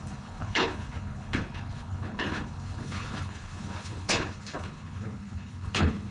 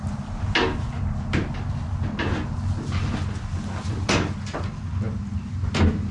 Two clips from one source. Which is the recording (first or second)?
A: second